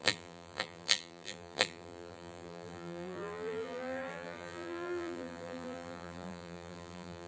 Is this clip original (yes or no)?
no